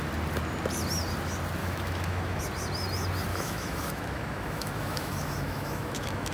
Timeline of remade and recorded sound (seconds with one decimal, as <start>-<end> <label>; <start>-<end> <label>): 0.0-1.6 recorded; 1.6-2.4 remade; 2.4-3.3 recorded; 3.3-6.3 remade

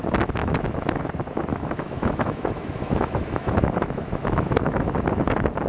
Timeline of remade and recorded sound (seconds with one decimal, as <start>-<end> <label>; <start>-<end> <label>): 0.0-0.4 recorded; 0.4-1.1 remade; 1.1-1.5 recorded; 1.5-4.9 remade; 4.9-5.7 recorded

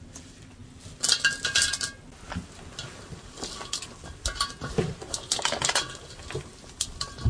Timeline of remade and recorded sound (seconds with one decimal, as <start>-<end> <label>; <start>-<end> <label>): 0.0-7.3 recorded

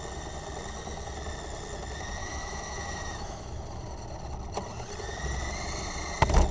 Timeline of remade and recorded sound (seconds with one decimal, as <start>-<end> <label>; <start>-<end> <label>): 0.0-2.2 recorded; 2.2-3.5 remade; 3.5-6.5 recorded

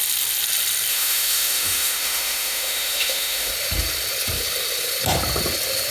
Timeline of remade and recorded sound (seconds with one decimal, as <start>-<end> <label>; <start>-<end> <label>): 0.0-0.9 recorded; 0.9-3.5 remade; 3.5-5.9 recorded

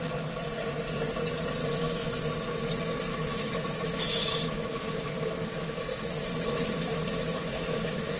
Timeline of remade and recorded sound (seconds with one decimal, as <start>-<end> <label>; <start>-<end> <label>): 0.0-1.6 recorded; 1.6-2.2 remade; 2.2-3.1 recorded; 3.1-8.2 remade